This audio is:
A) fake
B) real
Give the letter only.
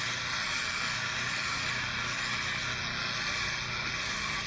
B